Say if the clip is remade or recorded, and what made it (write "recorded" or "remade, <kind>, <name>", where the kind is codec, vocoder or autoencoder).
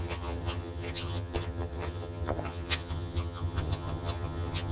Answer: remade, vocoder, HiFi-GAN